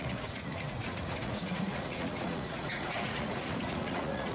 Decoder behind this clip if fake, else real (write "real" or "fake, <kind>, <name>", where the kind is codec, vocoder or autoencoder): fake, vocoder, Vocos